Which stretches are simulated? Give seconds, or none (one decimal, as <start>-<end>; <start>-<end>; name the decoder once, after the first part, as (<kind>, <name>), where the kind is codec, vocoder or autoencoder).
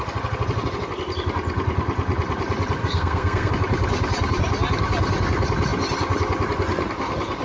2.8-3.5 (codec, SNAC)